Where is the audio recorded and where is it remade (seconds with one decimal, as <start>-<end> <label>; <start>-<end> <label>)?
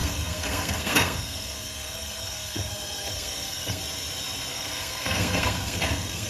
0.0-3.8 remade; 3.8-4.5 recorded; 4.5-6.3 remade